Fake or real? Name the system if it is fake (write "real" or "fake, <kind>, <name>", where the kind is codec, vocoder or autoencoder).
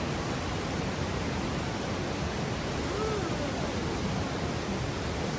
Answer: real